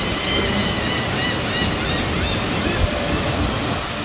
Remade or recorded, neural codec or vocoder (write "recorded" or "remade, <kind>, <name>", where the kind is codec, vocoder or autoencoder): recorded